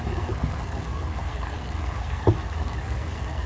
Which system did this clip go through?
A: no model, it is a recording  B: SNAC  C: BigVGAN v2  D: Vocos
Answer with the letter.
B